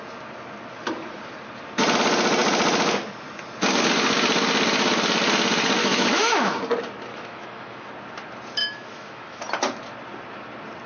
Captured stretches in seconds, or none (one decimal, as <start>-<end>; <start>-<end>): 0.0-5.8; 6.6-7.1; 7.9-8.6; 9.4-10.9